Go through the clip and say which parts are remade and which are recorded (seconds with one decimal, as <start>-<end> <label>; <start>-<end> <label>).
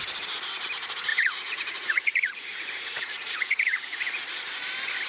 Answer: 0.0-1.1 recorded; 1.1-4.2 remade; 4.2-5.1 recorded